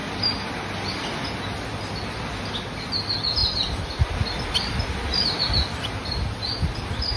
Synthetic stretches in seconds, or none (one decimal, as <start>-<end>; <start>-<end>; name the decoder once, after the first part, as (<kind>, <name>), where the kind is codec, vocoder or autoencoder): none